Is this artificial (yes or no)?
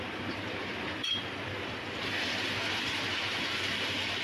yes